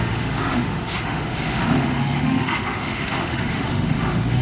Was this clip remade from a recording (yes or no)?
yes